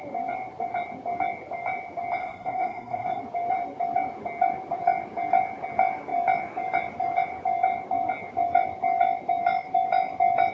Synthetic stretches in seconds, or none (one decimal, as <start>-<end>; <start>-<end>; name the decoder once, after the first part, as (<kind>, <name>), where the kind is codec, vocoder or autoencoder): 2.2-3.2 (codec, SNAC)